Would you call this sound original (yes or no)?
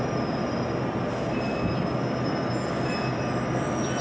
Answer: yes